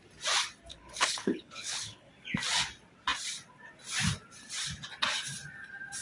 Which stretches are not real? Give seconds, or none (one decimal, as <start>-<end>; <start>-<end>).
0.7-2.1